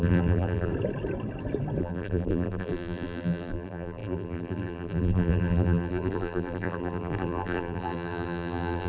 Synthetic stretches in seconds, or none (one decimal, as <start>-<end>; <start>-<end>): 0.0-0.7; 1.8-8.9